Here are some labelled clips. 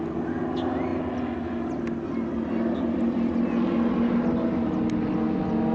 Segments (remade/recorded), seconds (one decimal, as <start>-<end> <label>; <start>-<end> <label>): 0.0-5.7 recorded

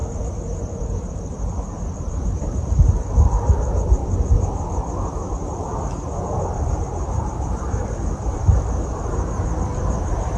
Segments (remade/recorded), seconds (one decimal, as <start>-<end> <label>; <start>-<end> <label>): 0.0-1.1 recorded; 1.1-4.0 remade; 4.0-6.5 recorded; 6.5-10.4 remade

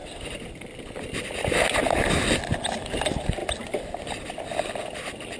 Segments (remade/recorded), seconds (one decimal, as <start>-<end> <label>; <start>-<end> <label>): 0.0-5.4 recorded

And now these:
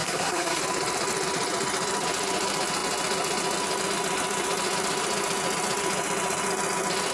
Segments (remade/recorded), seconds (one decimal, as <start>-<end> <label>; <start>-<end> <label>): 0.0-0.6 remade; 0.6-7.1 recorded

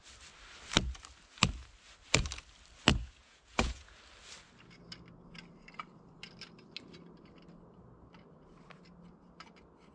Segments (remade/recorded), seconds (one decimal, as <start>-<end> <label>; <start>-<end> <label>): 0.0-2.9 recorded; 2.9-4.0 remade; 4.0-9.9 recorded

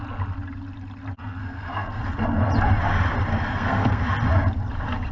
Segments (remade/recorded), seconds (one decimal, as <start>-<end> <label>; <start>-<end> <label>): 0.0-1.4 recorded; 1.4-2.0 remade; 2.0-3.3 recorded; 3.3-4.1 remade; 4.1-5.1 recorded

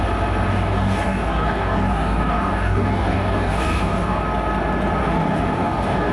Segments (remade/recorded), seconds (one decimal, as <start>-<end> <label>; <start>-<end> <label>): 0.0-0.5 recorded; 0.5-4.2 remade; 4.2-5.0 recorded; 5.0-6.1 remade

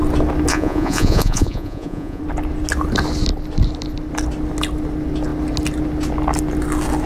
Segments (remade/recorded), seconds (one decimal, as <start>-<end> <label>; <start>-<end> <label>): 0.0-0.5 recorded; 0.5-2.2 remade; 2.2-7.1 recorded